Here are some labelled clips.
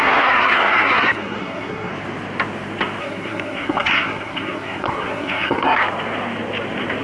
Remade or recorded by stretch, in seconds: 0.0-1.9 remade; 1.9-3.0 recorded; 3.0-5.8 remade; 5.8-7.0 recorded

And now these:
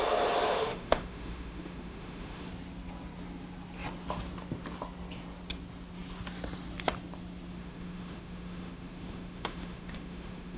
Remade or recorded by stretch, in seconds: 0.0-0.5 recorded; 0.5-2.5 remade; 2.5-7.5 recorded; 7.5-10.6 remade

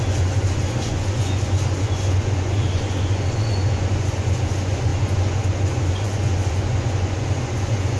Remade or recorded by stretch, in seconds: 0.0-8.0 remade

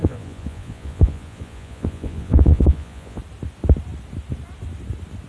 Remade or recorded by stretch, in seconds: 0.0-3.2 remade; 3.2-5.3 recorded